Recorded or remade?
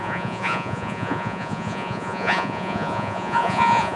remade